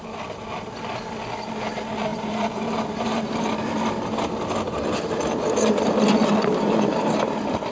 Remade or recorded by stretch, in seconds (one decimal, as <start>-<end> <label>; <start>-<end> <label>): 0.0-2.1 recorded; 2.1-3.5 remade; 3.5-6.5 recorded; 6.5-7.7 remade